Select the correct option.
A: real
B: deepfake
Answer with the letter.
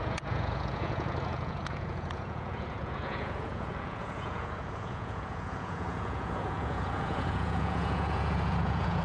B